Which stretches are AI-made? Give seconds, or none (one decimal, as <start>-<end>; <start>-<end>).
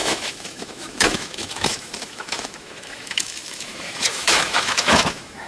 0.0-5.5